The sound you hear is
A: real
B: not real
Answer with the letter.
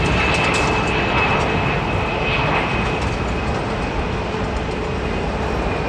A